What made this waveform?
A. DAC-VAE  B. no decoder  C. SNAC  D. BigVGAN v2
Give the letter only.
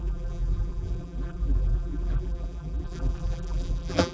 D